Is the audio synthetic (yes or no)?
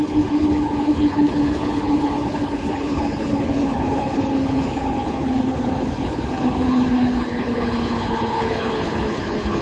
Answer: yes